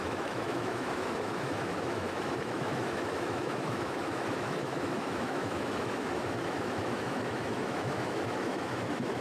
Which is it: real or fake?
fake